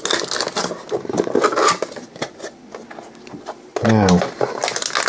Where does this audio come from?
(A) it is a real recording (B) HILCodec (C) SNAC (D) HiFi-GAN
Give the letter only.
A